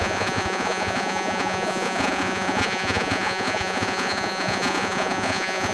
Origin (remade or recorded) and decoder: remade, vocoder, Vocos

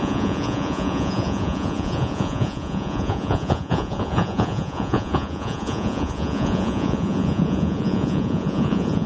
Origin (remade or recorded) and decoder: remade, vocoder, Vocos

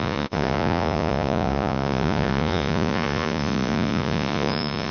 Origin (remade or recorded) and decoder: remade, vocoder, Vocos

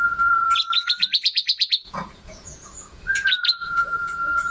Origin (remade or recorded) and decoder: remade, vocoder, Vocos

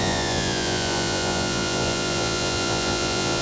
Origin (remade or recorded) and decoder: remade, vocoder, Vocos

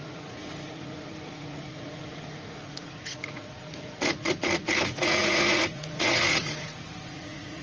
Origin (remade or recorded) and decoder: remade, vocoder, Vocos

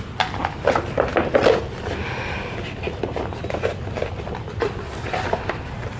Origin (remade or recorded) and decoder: recorded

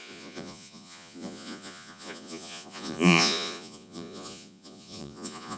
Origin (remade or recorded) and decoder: remade, vocoder, Vocos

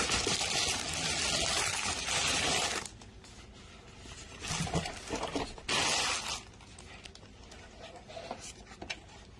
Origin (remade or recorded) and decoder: recorded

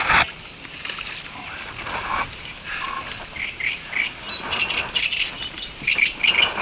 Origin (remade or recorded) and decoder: recorded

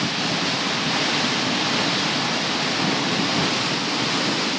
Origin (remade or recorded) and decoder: recorded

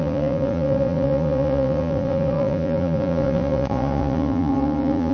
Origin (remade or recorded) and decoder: remade, vocoder, Vocos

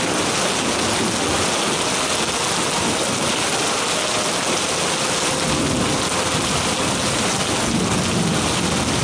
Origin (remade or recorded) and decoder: recorded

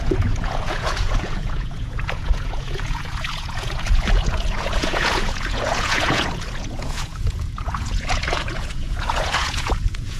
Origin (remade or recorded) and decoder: remade, vocoder, Vocos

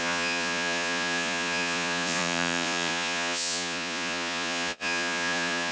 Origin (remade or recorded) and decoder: remade, vocoder, Vocos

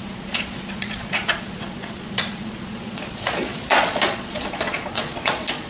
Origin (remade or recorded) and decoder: remade, vocoder, Vocos